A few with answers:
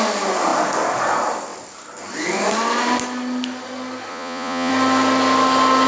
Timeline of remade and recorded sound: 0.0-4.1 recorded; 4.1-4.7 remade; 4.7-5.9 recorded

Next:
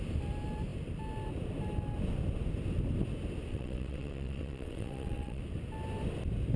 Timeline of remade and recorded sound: 0.0-3.5 recorded; 3.5-5.4 remade; 5.4-6.6 recorded

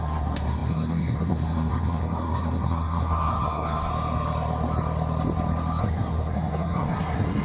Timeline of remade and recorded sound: 0.0-3.9 remade; 3.9-5.8 recorded; 5.8-7.4 remade

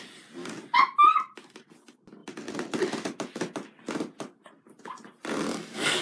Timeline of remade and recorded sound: 0.0-5.5 recorded; 5.5-6.0 remade

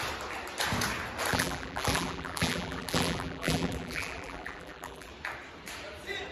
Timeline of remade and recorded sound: 0.0-1.3 recorded; 1.3-5.1 remade; 5.1-6.3 recorded

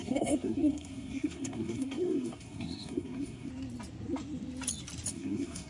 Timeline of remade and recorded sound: 0.0-3.5 remade; 3.5-5.1 recorded; 5.1-5.7 remade

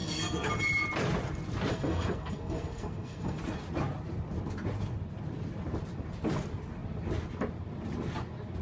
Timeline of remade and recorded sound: 0.0-0.5 remade; 0.5-1.7 recorded; 1.7-3.4 remade; 3.4-8.6 recorded